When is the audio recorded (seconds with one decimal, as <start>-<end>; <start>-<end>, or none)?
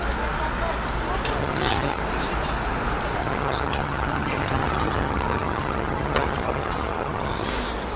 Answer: 0.0-1.4; 2.0-3.2; 7.5-8.0